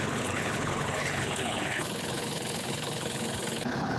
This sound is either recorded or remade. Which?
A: remade